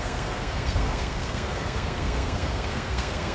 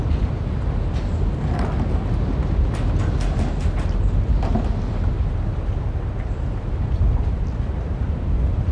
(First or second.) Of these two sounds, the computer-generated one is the first